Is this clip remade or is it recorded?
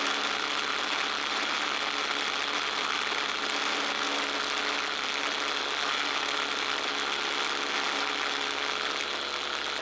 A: recorded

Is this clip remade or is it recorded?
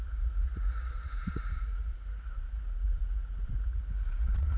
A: remade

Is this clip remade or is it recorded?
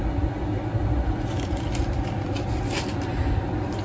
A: recorded